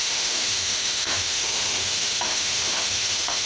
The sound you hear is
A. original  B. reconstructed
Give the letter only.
B